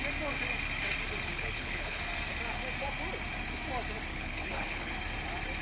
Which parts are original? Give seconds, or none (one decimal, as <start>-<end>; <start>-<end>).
0.0-1.3; 2.0-4.1; 4.9-5.6

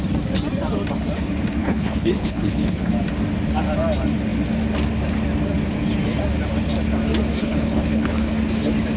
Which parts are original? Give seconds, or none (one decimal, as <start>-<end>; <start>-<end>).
0.0-1.6; 2.9-7.4; 8.3-9.0